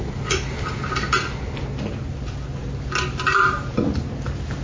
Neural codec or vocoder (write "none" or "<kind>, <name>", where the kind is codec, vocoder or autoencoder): none